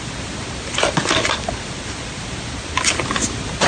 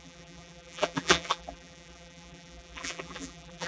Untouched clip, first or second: first